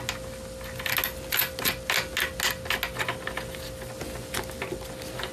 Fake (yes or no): no